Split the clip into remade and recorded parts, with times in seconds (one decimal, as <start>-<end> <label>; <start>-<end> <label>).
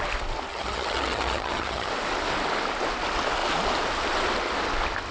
0.0-0.5 recorded; 0.5-1.9 remade; 1.9-5.1 recorded